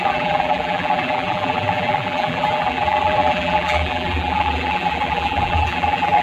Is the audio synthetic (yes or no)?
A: yes